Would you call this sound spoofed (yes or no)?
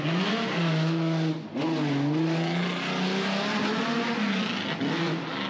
no